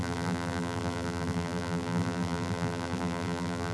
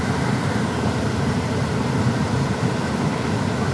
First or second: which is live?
second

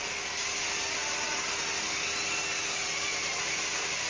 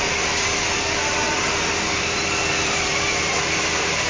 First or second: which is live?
first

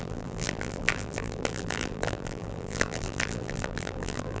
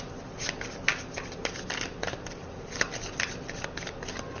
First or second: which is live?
second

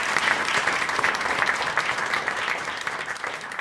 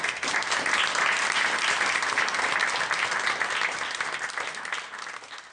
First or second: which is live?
second